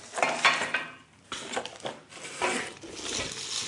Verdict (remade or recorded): recorded